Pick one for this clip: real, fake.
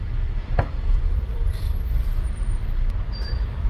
fake